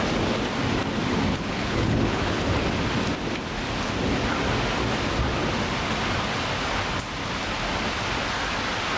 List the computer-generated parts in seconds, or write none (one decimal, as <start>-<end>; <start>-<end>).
1.3-2.4